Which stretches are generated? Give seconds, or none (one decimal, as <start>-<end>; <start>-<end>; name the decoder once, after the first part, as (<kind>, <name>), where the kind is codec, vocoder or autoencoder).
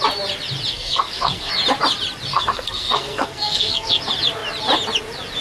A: 0.7-1.5 (codec, SNAC); 2.3-4.0